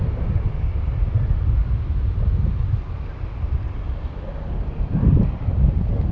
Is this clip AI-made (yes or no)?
no